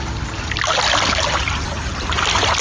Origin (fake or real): real